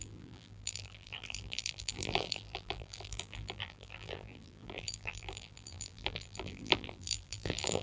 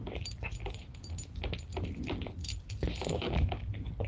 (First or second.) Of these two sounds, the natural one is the second